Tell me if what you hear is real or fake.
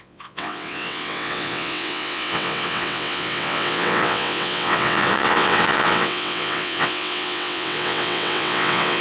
fake